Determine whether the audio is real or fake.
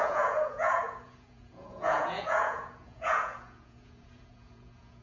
fake